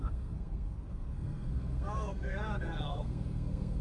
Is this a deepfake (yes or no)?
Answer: yes